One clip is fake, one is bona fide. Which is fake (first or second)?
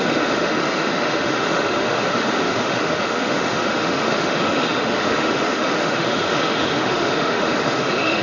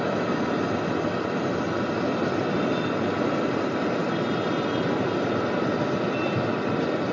first